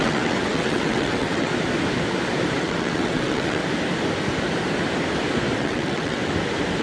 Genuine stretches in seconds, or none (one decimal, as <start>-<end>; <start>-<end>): 1.5-2.6; 3.6-5.6; 6.2-6.8